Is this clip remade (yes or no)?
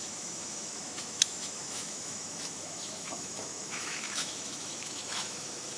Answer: yes